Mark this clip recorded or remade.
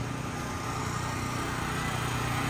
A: recorded